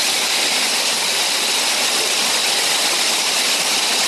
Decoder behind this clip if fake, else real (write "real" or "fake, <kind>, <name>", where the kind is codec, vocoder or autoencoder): real